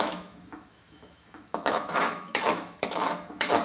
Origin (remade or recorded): remade